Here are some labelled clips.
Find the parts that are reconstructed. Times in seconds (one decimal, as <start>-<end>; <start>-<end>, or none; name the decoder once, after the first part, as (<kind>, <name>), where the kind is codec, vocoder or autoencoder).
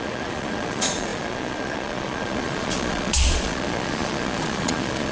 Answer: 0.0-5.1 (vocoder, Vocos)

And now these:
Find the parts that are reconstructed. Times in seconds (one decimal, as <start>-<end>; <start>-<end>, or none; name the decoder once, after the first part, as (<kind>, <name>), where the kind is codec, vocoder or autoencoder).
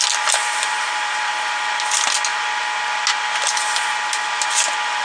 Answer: 0.4-1.3 (vocoder, BigVGAN v2)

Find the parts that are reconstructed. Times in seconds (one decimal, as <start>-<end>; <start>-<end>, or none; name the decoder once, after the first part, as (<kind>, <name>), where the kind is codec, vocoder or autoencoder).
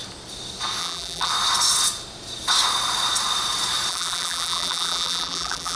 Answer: 0.8-1.3 (vocoder, BigVGAN v2); 3.9-5.8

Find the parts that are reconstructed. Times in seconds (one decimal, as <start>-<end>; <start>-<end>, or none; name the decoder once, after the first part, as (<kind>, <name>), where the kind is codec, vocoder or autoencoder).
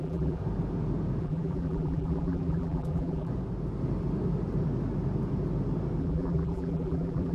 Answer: 0.0-0.4 (vocoder, BigVGAN v2); 1.2-3.3; 6.0-7.3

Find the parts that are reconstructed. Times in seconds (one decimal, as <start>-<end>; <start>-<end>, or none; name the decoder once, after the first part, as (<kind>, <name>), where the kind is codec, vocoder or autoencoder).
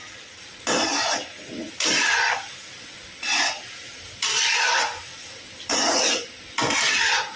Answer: none